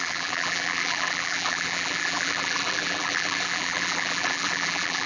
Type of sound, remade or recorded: remade